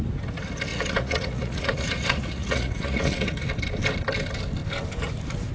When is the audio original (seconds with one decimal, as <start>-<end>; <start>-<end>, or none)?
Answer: 0.0-0.7; 3.5-5.5